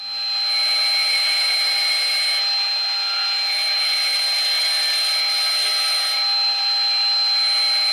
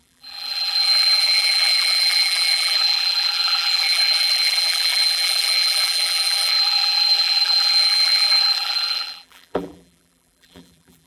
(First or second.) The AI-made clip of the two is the second